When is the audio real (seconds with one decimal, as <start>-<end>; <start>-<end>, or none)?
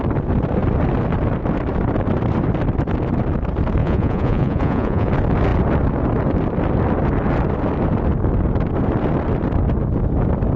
0.0-3.8; 5.1-10.6